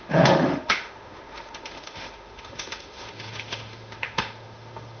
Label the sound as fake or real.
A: fake